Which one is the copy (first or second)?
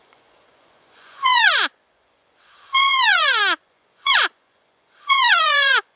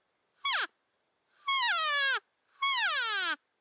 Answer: first